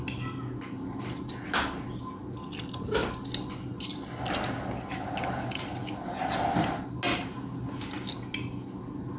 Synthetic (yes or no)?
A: no